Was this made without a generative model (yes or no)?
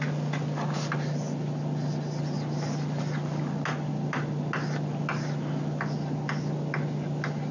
yes